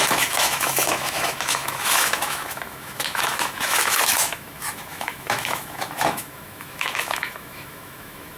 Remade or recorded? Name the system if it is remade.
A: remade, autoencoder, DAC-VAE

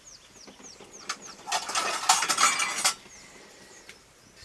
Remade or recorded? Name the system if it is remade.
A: recorded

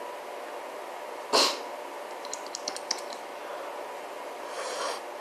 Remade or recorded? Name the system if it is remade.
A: recorded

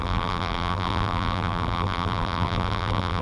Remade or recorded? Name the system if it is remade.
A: remade, vocoder, BigVGAN v2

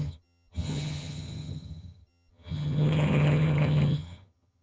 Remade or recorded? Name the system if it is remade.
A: remade, vocoder, HiFi-GAN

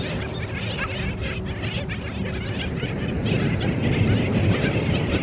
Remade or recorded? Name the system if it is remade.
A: recorded